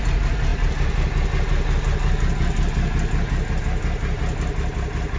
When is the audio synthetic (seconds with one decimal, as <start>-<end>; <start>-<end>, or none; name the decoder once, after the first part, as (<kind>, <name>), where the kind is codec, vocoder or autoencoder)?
none